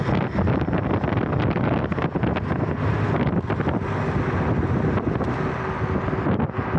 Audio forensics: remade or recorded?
recorded